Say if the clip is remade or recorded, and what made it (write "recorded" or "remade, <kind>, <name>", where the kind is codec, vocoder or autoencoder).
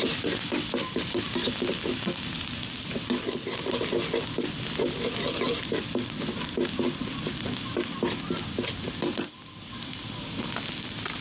recorded